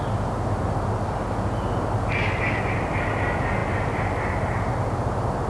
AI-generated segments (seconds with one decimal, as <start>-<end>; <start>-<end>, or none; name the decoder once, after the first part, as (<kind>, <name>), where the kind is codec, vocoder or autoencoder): none